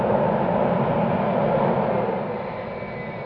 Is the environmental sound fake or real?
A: real